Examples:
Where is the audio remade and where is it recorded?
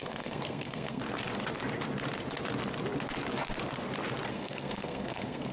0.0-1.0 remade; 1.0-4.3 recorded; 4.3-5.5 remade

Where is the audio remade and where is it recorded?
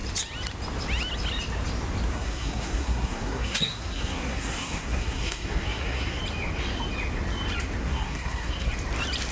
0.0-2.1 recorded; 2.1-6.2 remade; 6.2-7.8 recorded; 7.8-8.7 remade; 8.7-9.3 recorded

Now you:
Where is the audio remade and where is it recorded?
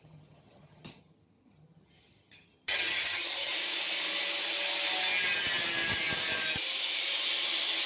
0.0-3.5 remade; 3.5-7.9 recorded